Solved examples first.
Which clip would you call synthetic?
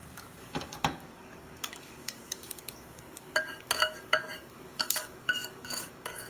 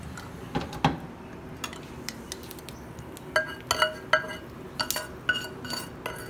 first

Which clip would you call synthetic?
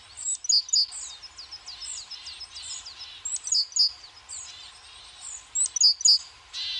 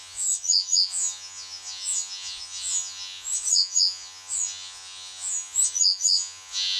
second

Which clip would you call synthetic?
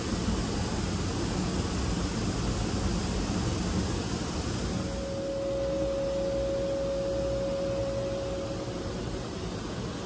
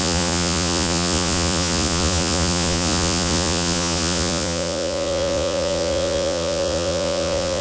second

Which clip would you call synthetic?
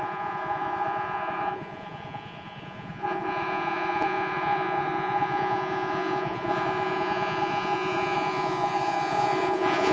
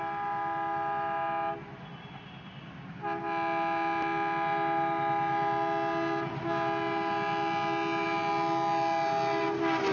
first